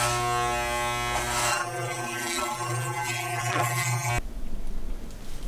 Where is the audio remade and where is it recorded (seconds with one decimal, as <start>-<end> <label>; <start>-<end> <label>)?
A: 0.0-1.5 recorded; 1.5-4.1 remade; 4.1-5.5 recorded